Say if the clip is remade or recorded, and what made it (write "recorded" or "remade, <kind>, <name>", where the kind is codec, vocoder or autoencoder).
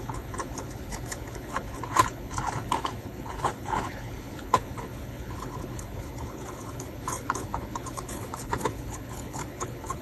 remade, codec, HILCodec